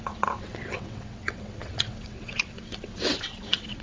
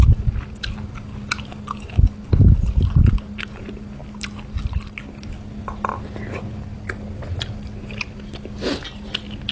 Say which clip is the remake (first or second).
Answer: first